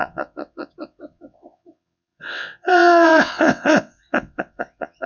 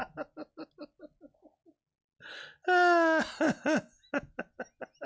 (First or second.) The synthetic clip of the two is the first